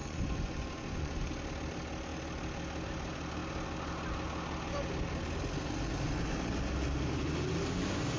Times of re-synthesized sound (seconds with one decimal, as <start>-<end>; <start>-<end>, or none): 0.0-1.3